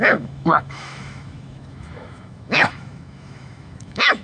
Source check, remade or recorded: remade